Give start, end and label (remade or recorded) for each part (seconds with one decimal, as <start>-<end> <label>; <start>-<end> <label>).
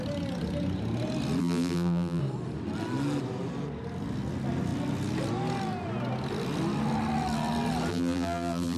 0.0-1.4 recorded; 1.4-2.2 remade; 2.2-7.9 recorded; 7.9-8.8 remade